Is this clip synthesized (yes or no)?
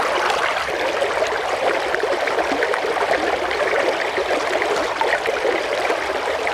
no